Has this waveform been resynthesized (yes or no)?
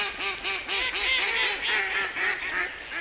no